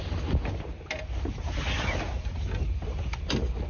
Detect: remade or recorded recorded